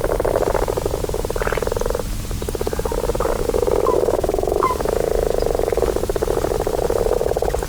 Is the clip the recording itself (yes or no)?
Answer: yes